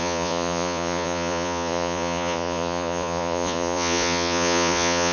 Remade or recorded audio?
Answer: remade